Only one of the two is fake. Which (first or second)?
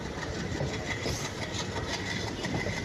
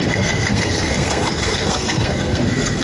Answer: second